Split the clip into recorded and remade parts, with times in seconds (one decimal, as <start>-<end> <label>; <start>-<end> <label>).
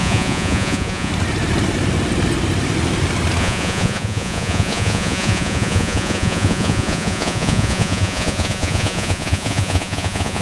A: 0.0-1.1 remade; 1.1-3.4 recorded; 3.4-10.4 remade